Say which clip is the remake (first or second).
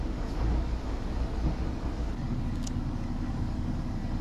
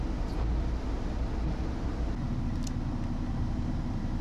first